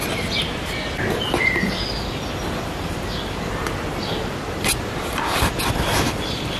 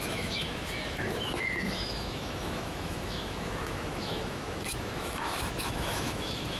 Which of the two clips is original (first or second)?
first